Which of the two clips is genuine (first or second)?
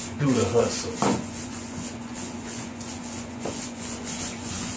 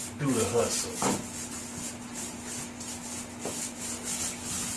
second